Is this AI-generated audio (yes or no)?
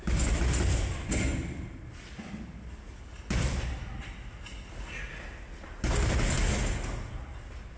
no